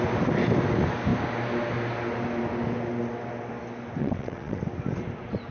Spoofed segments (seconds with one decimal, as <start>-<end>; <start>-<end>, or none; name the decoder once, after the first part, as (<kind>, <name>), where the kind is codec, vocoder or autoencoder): 4.0-4.6 (vocoder, WaveNeXt)